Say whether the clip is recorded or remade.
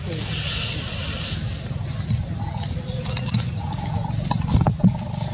remade